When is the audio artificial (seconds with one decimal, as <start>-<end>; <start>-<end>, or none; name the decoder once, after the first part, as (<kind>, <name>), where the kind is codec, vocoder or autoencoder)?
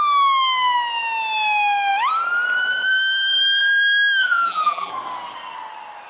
4.2-4.9 (vocoder, BigVGAN v2)